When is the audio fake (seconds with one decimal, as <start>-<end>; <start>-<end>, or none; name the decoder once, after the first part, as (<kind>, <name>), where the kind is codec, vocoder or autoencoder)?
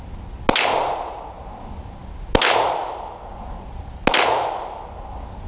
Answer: 0.7-1.3 (vocoder, Vocos)